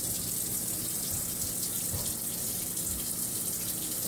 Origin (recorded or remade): remade